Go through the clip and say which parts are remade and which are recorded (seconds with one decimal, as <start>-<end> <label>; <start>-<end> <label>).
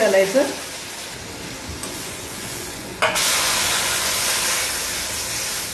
0.0-1.8 recorded; 1.8-4.4 remade; 4.4-5.7 recorded